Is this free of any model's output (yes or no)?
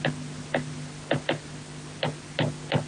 yes